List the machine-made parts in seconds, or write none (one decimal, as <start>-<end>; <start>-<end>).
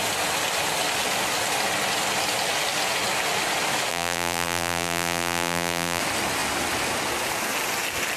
3.9-6.0